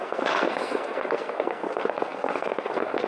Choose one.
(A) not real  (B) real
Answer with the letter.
A